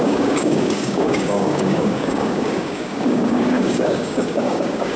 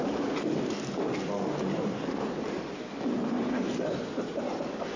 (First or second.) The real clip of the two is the second